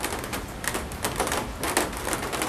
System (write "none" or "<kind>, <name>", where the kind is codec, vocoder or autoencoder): none